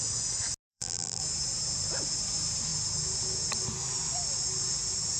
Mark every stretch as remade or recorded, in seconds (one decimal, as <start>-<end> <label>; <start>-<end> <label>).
0.0-0.7 recorded; 0.7-1.2 remade; 1.2-5.2 recorded